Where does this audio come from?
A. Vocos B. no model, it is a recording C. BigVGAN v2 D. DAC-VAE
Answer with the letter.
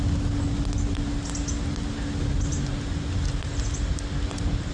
B